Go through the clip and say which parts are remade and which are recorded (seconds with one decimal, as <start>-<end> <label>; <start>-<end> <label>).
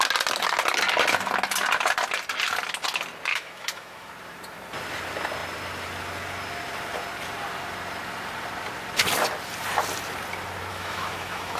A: 0.0-3.3 recorded; 3.3-4.1 remade; 4.1-10.7 recorded; 10.7-11.6 remade